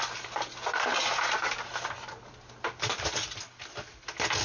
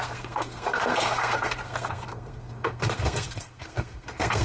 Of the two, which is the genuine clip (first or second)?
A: first